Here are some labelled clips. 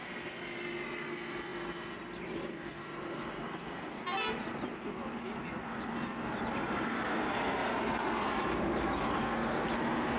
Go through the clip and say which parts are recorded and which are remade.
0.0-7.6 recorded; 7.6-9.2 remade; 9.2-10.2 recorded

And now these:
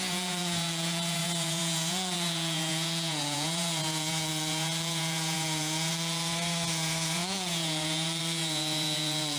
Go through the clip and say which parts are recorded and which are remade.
0.0-9.4 remade

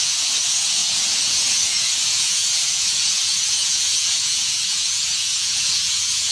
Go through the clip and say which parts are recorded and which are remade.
0.0-6.3 remade

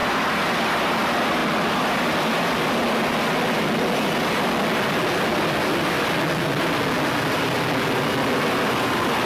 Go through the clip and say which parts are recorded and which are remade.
0.0-0.8 remade; 0.8-9.3 recorded

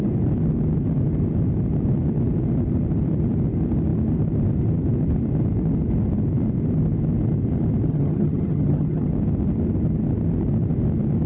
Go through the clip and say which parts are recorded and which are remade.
0.0-7.9 recorded; 7.9-9.1 remade; 9.1-11.3 recorded

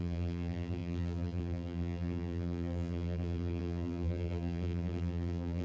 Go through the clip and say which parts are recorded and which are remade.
0.0-5.6 remade